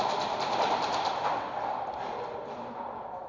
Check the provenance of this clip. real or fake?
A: real